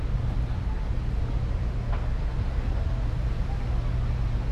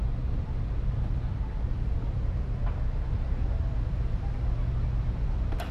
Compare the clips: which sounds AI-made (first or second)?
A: second